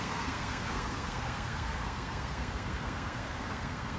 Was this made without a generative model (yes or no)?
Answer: no